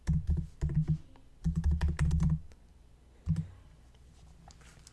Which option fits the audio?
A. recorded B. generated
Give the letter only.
A